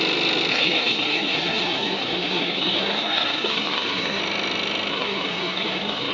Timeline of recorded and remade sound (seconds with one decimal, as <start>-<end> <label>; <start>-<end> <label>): 0.0-0.5 recorded; 0.5-4.2 remade; 4.2-4.9 recorded; 4.9-6.1 remade